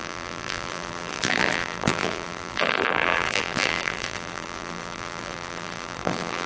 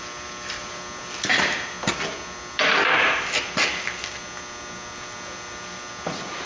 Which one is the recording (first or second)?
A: second